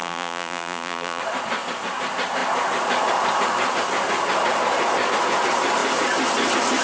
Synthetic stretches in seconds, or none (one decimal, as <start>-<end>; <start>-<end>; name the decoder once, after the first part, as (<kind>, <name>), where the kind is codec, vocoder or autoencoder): 0.0-1.2 (vocoder, BigVGAN v2)

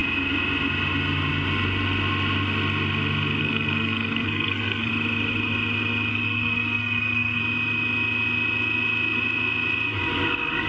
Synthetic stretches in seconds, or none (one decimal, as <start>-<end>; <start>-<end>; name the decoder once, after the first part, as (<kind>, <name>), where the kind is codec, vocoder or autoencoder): 3.4-4.9 (codec, SNAC); 6.1-7.4

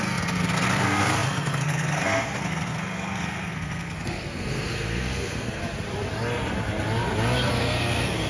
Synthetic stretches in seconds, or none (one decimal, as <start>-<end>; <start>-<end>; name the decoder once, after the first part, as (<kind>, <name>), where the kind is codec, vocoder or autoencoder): 0.0-5.6 (codec, SNAC); 7.5-8.3